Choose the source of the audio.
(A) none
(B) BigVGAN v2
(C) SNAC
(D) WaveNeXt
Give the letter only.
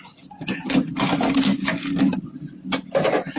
A